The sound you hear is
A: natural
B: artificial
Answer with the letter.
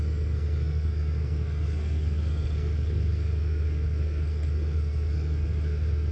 B